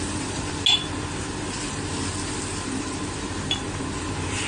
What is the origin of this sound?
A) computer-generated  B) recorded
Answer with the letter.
B